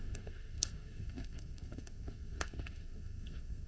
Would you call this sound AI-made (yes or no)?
yes